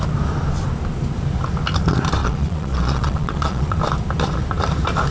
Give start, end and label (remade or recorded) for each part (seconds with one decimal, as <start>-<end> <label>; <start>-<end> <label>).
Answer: 0.0-2.2 recorded; 2.2-3.8 remade; 3.8-5.1 recorded